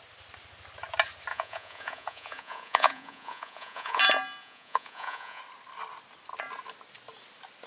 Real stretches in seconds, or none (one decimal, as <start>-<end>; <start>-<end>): 0.0-1.3; 4.0-4.4; 5.4-7.7